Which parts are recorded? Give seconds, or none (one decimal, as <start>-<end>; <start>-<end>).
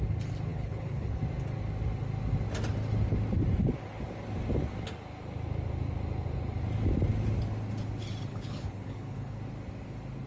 0.0-0.5; 1.2-8.3; 9.4-10.3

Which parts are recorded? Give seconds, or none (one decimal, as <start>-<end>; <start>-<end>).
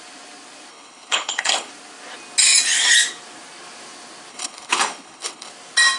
0.0-0.7; 1.7-4.3; 5.5-6.0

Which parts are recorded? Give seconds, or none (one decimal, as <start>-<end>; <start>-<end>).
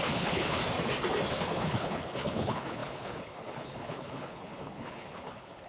0.6-1.3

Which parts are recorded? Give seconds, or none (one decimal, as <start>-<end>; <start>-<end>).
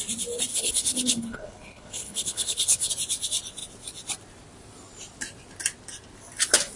0.0-0.5; 2.9-6.8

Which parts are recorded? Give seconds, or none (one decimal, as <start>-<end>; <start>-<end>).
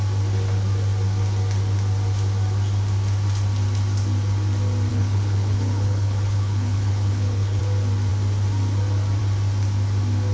0.0-4.9; 7.6-10.3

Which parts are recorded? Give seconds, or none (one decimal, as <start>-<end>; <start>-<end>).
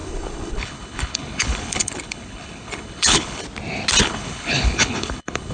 3.4-4.0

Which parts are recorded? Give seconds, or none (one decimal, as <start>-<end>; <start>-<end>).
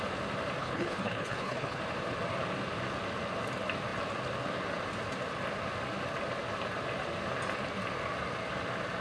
0.0-0.6; 1.8-9.0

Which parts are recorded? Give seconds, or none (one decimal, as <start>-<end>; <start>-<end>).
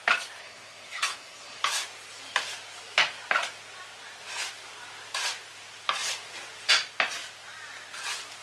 0.0-0.4; 1.6-8.4